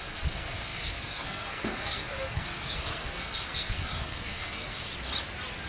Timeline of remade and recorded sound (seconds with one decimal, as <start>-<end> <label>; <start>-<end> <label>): 0.0-4.9 remade; 4.9-5.7 recorded